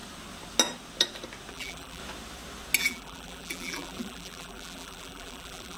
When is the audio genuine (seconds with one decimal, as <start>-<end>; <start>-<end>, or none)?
0.0-1.5; 2.0-2.8